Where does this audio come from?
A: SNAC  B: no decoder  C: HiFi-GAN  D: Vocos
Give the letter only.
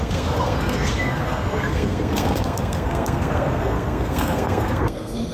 A